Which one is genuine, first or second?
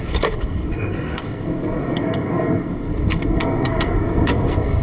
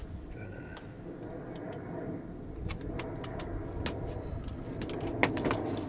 second